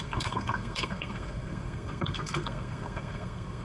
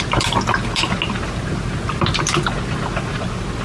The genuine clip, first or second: second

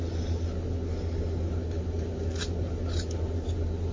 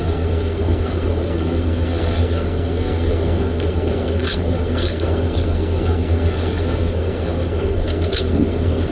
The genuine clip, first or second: first